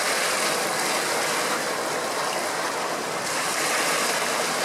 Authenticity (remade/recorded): recorded